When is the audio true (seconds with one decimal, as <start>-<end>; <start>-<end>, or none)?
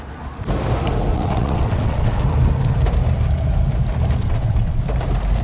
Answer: 0.0-1.1; 2.2-4.2; 4.8-5.4